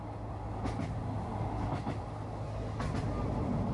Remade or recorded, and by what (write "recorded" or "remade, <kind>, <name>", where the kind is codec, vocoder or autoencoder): recorded